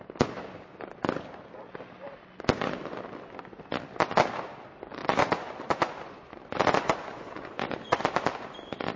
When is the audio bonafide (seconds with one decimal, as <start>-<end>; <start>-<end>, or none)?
0.0-5.0; 8.0-9.0